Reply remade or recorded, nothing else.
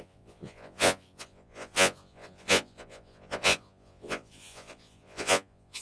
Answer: remade